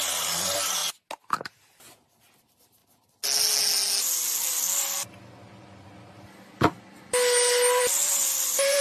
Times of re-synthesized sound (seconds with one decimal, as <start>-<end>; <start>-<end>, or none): 0.0-0.8; 2.2-2.8; 7.8-8.8

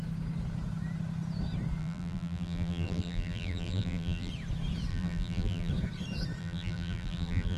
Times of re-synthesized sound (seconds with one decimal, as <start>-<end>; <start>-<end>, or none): 1.8-4.3; 4.9-5.7; 6.4-7.6

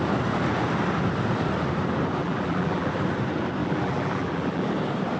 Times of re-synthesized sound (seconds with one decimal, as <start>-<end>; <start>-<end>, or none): 2.2-2.9; 3.6-4.7

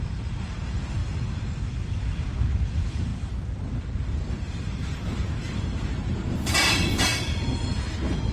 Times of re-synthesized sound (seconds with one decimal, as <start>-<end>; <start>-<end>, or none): 0.0-1.0; 2.7-3.1; 3.8-7.1; 7.7-8.3